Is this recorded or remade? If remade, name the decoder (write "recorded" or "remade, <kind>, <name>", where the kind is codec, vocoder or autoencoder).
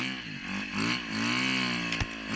recorded